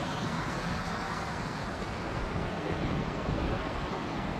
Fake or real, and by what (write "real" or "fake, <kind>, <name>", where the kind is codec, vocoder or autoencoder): fake, codec, SNAC